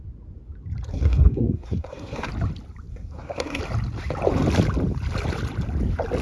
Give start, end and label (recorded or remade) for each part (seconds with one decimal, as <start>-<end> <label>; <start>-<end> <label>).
0.0-0.9 recorded; 0.9-2.3 remade; 2.3-2.9 recorded; 2.9-3.6 remade; 3.6-6.2 recorded